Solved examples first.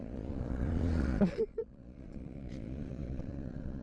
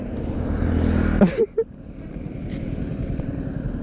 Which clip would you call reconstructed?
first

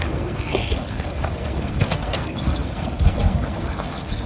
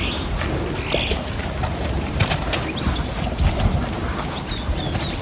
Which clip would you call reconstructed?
first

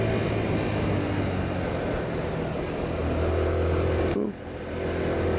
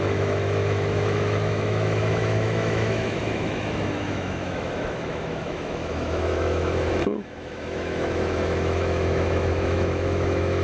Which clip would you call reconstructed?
second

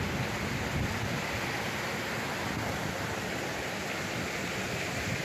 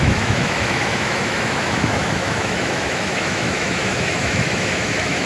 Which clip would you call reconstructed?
second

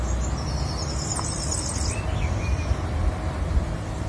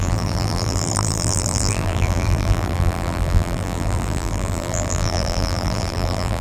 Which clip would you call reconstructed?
second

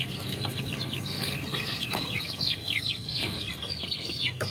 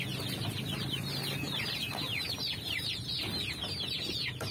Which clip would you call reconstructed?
first